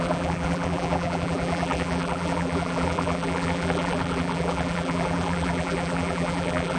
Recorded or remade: remade